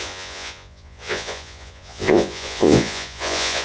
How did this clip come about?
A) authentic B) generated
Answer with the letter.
B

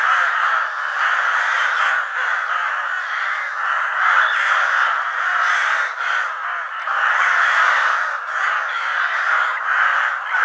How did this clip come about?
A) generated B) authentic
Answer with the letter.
B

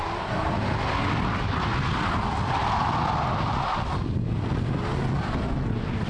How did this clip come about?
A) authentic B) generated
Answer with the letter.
A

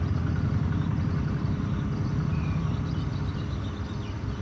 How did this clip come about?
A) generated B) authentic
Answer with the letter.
B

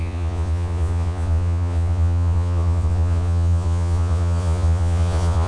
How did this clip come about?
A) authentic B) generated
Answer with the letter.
B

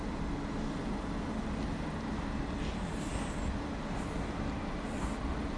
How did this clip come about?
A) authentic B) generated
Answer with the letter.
A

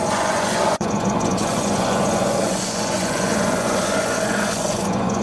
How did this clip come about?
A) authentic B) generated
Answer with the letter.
B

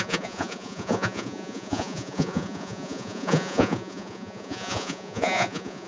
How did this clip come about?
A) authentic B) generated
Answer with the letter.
B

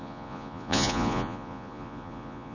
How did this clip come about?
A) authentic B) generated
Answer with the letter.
B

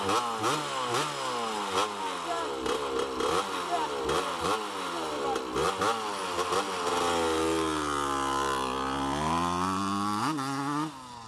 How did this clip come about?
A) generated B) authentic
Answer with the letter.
B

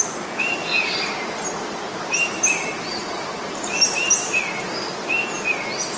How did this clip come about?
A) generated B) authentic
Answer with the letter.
B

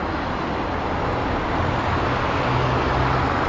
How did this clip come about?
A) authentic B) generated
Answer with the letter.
A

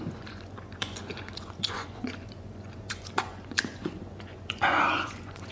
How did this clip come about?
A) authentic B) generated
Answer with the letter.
B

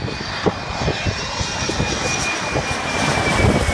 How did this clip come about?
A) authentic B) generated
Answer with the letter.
A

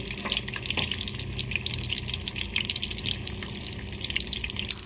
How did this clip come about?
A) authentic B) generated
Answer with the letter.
A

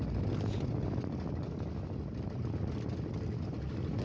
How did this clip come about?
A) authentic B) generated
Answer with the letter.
A